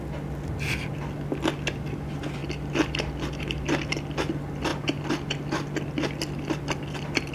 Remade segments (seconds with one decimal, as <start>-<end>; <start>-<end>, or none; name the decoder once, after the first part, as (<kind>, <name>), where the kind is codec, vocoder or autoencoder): 2.4-4.3 (vocoder, BigVGAN v2); 4.7-7.3